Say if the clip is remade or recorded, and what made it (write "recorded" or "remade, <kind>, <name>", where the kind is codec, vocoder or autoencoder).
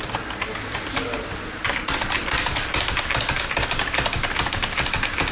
recorded